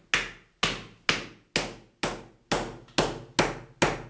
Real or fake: real